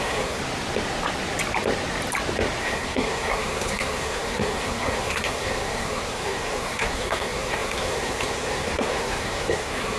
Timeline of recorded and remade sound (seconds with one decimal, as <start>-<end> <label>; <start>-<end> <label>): 0.0-0.4 remade; 0.4-2.6 recorded; 2.6-10.0 remade

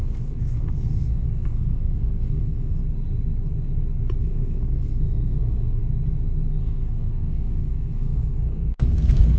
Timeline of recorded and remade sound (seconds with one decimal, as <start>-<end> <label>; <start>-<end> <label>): 0.0-2.8 remade; 2.8-4.2 recorded; 4.2-5.8 remade; 5.8-6.6 recorded; 6.6-9.4 remade

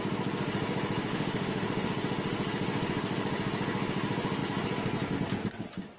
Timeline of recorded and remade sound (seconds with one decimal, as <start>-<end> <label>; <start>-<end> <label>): 0.0-1.1 recorded; 1.1-1.9 remade; 1.9-6.0 recorded

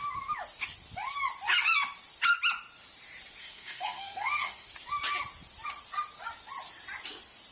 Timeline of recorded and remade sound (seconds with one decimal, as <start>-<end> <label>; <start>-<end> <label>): 0.0-3.4 recorded; 3.4-4.7 remade; 4.7-7.5 recorded

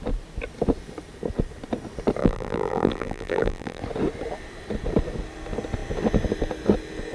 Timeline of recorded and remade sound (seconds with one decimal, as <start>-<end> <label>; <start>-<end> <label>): 0.0-2.2 recorded; 2.2-3.8 remade; 3.8-7.1 recorded

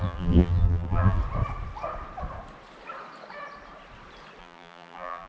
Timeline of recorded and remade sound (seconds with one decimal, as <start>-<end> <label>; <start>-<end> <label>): 0.0-1.2 remade; 1.2-4.4 recorded; 4.4-5.3 remade